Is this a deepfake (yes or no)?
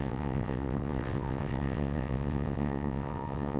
yes